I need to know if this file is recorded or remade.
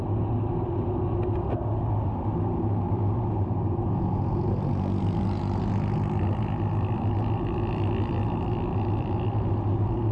recorded